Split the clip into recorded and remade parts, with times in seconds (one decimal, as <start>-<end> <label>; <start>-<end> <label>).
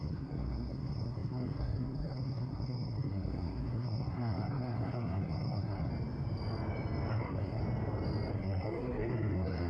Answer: 0.0-5.9 remade; 5.9-7.1 recorded; 7.1-7.6 remade; 7.6-8.3 recorded; 8.3-9.7 remade